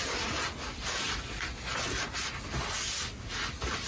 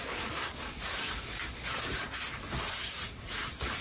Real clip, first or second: first